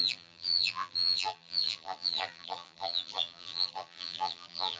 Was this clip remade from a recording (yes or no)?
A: yes